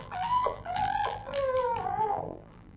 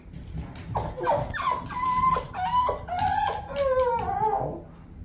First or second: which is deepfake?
first